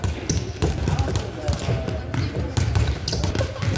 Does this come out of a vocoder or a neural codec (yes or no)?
no